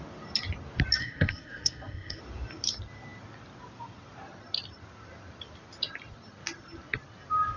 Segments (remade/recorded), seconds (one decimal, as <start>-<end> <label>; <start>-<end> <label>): 0.0-1.0 recorded; 1.0-2.2 remade; 2.2-7.6 recorded